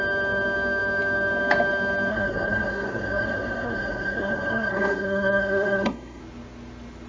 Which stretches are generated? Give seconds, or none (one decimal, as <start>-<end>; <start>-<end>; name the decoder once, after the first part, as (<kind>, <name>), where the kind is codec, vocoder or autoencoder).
2.1-6.2 (codec, SNAC)